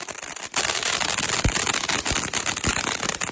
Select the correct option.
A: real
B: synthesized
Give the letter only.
A